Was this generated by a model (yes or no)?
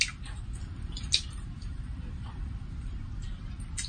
no